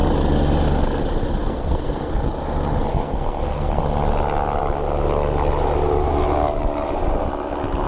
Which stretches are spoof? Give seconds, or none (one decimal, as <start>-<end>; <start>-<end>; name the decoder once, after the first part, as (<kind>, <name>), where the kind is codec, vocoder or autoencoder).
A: 1.4-2.1 (codec, SNAC); 2.9-3.8